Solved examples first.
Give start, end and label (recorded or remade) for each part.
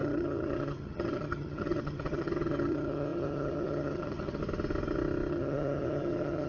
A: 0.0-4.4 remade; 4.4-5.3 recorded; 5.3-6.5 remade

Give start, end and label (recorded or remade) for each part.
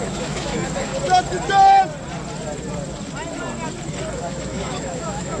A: 0.0-0.9 remade; 0.9-4.1 recorded; 4.1-5.4 remade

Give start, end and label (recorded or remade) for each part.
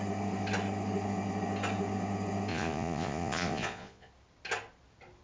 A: 0.0-2.5 recorded; 2.5-4.1 remade; 4.1-5.2 recorded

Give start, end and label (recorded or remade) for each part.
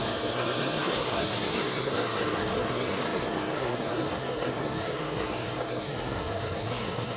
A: 0.0-7.2 remade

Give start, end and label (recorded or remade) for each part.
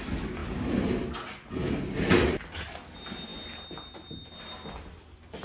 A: 0.0-5.4 recorded